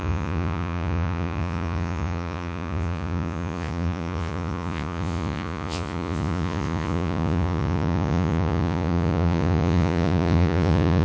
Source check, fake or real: fake